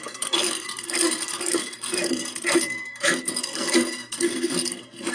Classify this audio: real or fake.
fake